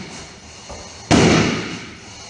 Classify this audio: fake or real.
real